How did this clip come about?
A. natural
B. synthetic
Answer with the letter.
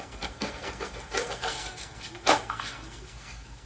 B